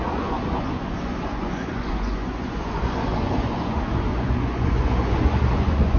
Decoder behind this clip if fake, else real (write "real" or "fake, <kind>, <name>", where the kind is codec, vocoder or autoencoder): fake, vocoder, Vocos